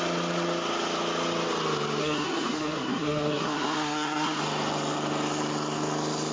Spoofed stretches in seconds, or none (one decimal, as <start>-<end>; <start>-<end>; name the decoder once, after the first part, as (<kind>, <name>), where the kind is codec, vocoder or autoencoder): 2.0-4.4 (codec, SNAC)

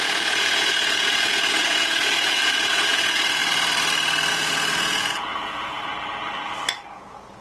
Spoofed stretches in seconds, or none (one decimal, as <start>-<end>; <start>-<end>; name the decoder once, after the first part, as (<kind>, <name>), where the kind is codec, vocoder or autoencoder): 0.0-3.4 (vocoder, Vocos); 4.3-5.9; 6.9-7.4

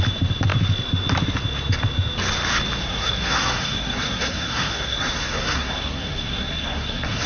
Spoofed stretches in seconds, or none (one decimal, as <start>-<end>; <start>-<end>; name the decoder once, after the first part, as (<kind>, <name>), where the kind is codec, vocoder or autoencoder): 2.8-7.3 (codec, SNAC)

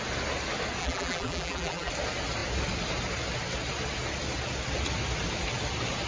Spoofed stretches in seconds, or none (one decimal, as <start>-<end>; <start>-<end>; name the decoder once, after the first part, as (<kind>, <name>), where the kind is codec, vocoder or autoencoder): 0.8-1.9 (vocoder, BigVGAN v2)

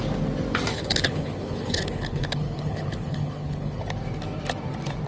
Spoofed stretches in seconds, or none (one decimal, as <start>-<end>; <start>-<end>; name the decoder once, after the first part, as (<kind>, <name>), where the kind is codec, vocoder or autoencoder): 0.7-3.8 (codec, HILCodec)

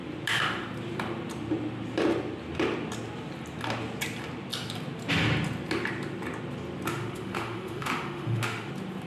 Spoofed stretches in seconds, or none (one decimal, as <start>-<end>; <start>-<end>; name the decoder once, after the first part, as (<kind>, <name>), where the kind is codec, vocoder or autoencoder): 6.9-8.7 (autoencoder, DAC-VAE)

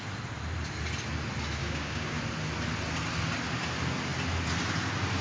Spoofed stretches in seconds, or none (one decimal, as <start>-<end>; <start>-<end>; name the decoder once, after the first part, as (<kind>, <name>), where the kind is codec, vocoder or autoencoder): 1.6-2.2 (codec, DAC)